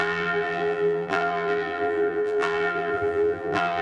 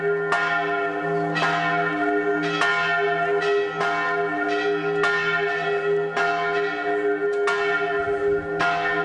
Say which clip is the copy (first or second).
first